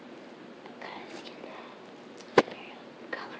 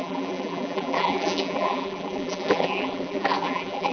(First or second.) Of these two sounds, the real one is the first